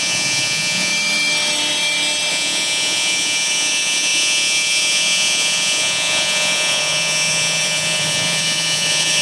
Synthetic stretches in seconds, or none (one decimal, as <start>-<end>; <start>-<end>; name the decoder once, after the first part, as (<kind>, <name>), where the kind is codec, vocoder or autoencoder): 0.0-0.9 (vocoder, Vocos); 2.3-9.2